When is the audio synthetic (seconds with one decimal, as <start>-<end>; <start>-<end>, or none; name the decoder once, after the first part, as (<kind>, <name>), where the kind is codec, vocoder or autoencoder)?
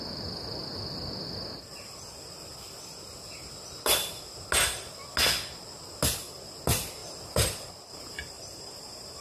7.0-9.2 (vocoder, BigVGAN v2)